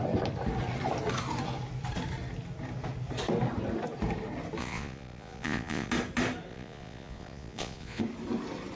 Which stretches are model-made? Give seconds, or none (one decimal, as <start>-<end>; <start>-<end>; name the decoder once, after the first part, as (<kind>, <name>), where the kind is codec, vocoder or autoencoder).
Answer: 4.6-5.9 (vocoder, Vocos); 6.5-8.0